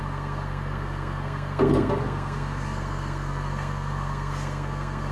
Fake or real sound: fake